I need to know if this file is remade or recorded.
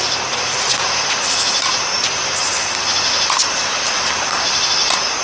remade